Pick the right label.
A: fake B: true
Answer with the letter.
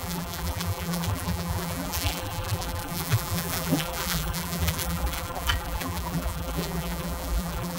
A